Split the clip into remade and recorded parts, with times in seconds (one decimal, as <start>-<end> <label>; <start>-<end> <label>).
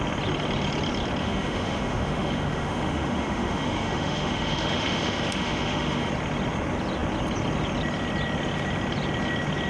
0.0-1.2 recorded; 1.2-6.1 remade; 6.1-9.7 recorded